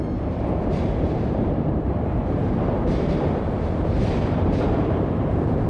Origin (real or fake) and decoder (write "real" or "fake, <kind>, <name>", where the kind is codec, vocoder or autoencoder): fake, vocoder, BigVGAN v2